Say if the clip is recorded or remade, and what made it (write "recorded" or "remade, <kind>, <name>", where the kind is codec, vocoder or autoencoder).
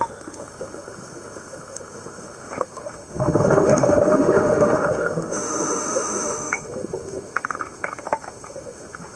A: remade, autoencoder, DAC-VAE